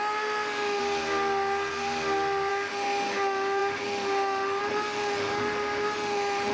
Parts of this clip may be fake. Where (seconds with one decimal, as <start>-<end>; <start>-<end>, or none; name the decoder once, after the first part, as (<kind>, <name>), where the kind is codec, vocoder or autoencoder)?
0.0-0.8 (autoencoder, DAC-VAE); 2.5-6.5